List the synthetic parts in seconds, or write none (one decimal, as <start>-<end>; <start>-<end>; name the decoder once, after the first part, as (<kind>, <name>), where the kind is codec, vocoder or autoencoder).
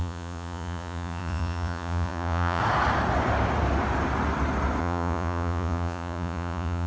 0.0-2.6 (vocoder, Vocos); 4.8-6.9